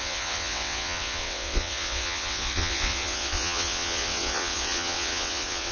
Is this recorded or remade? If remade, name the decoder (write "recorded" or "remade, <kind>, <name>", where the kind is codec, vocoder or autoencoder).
remade, vocoder, WaveNeXt